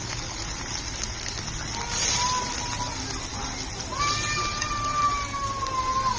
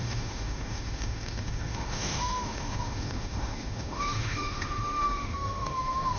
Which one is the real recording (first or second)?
first